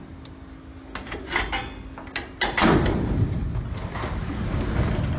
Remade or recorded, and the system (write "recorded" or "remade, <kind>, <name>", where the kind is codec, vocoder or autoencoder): recorded